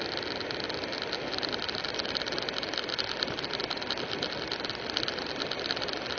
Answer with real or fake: real